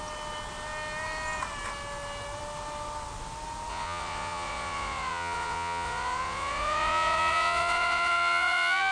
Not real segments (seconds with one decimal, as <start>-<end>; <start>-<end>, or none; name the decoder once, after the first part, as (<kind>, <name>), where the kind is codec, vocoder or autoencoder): 3.7-8.9 (vocoder, Vocos)